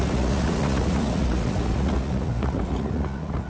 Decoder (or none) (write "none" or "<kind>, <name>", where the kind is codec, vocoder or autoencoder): vocoder, Vocos